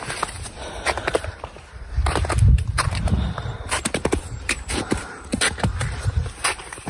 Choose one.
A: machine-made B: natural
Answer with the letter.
A